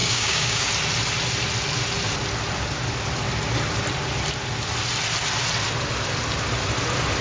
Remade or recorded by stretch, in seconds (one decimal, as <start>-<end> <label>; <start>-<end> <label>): 0.0-0.7 remade; 0.7-7.2 recorded